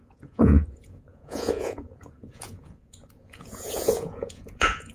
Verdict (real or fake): fake